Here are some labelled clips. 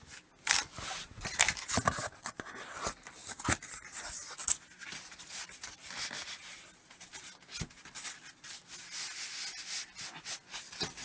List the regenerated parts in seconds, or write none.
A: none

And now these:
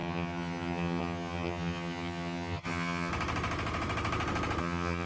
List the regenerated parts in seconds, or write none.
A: 0.0-3.1 (vocoder, HiFi-GAN); 4.6-5.1

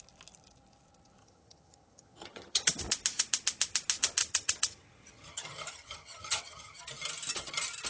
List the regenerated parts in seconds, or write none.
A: 1.2-2.8 (vocoder, HiFi-GAN); 4.2-6.8

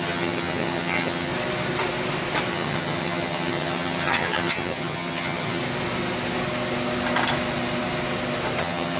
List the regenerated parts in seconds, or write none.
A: 0.0-1.3 (vocoder, HiFi-GAN); 2.5-5.6; 8.6-9.0

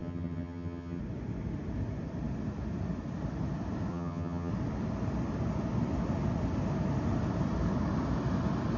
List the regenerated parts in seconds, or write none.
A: 0.0-1.0 (vocoder, HiFi-GAN); 3.9-4.5

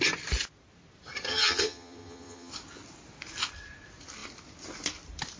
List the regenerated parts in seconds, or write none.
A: 1.3-2.5 (vocoder, HiFi-GAN)

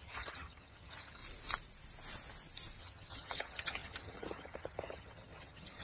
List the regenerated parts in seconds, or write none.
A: 0.0-1.2 (vocoder, HiFi-GAN); 2.8-5.8